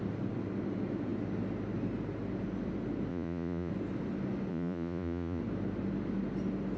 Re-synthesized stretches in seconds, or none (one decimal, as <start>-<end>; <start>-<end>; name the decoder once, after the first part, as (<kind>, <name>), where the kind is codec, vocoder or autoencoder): 3.1-3.7 (vocoder, Vocos); 4.5-5.4